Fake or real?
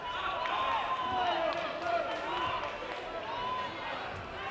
real